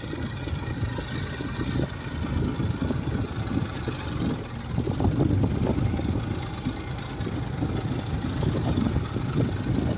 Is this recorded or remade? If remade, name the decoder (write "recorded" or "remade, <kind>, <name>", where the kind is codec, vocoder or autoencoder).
recorded